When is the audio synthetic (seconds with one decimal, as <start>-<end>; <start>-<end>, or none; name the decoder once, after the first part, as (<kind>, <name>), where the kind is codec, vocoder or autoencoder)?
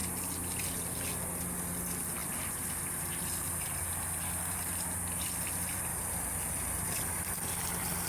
0.0-1.4 (vocoder, BigVGAN v2); 2.2-3.8; 5.9-7.5